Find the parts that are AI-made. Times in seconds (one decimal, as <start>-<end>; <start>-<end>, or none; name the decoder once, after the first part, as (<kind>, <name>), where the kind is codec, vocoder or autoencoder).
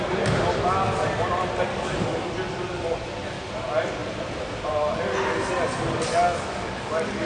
1.7-2.3 (codec, DAC); 6.1-7.3